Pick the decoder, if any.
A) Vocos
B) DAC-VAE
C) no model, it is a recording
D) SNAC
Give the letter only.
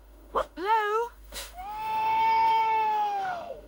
B